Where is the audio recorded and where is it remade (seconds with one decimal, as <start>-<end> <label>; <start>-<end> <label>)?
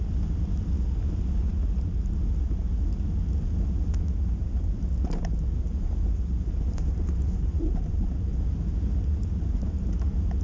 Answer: 0.0-10.4 recorded